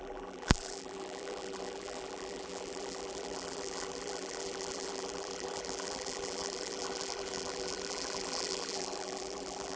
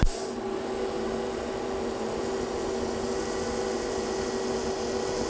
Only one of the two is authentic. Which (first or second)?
second